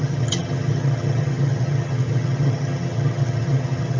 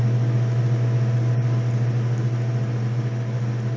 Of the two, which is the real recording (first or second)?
second